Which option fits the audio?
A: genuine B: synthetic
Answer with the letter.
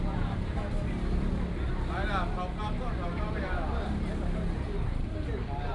A